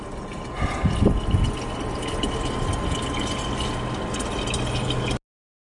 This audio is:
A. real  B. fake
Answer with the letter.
A